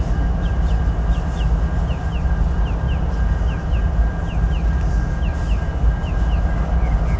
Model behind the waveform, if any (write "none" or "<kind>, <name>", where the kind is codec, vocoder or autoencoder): none